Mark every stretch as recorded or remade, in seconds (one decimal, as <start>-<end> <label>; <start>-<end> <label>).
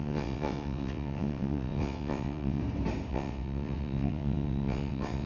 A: 0.0-2.6 remade; 2.6-3.1 recorded; 3.1-5.3 remade